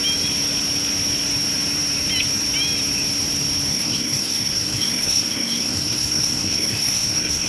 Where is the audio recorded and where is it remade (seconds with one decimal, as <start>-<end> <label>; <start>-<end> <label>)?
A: 0.0-3.7 recorded; 3.7-7.5 remade